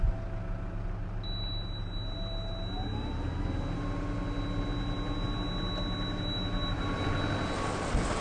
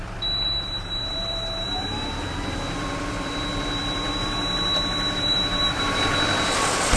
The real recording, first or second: first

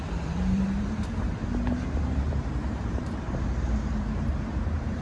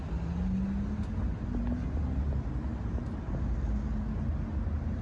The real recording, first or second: second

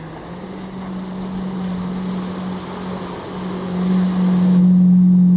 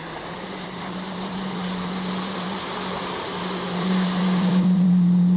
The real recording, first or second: first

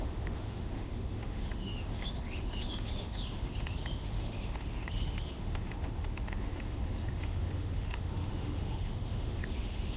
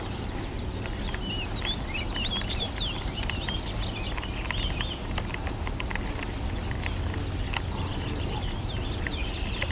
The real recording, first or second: second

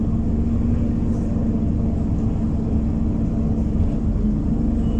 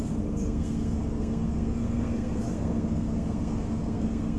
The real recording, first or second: first